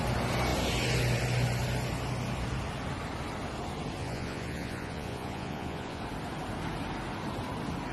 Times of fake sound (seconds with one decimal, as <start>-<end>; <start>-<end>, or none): 4.0-6.0